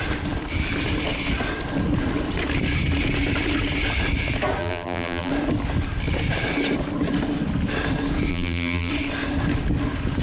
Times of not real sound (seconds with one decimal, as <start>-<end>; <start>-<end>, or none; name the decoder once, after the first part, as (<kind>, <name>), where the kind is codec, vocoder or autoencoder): 4.6-5.3 (vocoder, BigVGAN v2); 8.3-8.9